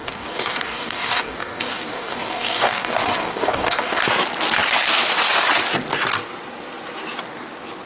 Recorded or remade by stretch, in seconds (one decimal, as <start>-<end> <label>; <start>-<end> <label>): 0.0-4.0 remade; 4.0-7.9 recorded